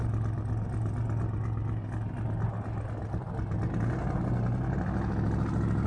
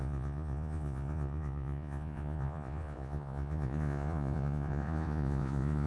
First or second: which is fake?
second